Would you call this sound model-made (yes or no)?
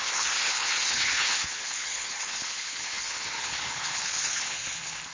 yes